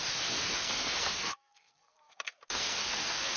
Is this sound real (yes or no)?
no